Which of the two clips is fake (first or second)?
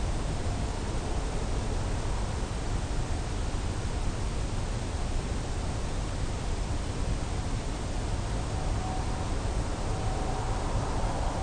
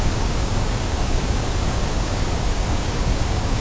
second